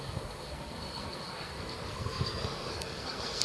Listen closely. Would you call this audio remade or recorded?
remade